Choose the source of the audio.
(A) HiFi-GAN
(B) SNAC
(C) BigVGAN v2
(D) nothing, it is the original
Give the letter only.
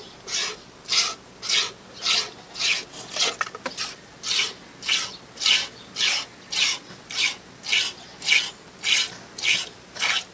D